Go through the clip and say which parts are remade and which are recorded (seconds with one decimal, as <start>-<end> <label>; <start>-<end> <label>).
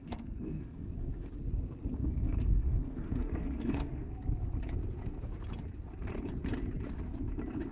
0.0-1.3 remade; 1.3-2.0 recorded; 2.0-4.1 remade; 4.1-7.7 recorded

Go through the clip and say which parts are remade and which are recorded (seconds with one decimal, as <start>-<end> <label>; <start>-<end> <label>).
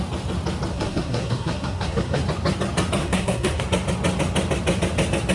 0.0-0.7 recorded; 0.7-2.2 remade; 2.2-3.0 recorded; 3.0-3.6 remade; 3.6-5.3 recorded